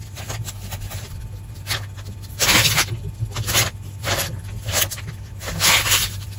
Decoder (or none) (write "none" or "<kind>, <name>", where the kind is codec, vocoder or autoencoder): none